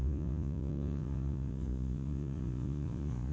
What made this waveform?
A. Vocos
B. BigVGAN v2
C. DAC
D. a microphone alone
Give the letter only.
A